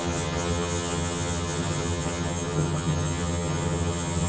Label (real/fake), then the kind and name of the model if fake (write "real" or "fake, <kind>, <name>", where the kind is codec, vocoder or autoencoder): fake, vocoder, HiFi-GAN